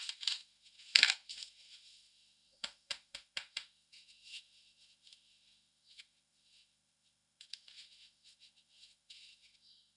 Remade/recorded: remade